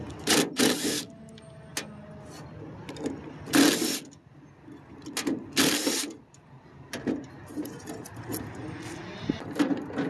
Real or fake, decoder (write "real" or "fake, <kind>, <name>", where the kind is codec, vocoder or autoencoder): real